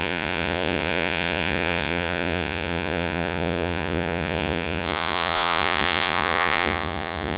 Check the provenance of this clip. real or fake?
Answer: fake